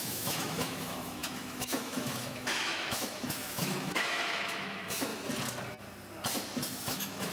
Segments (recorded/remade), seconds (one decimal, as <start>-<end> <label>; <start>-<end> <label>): 0.0-5.1 remade; 5.1-6.8 recorded; 6.8-7.3 remade